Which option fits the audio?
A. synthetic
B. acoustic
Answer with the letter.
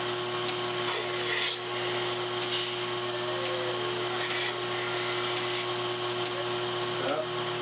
B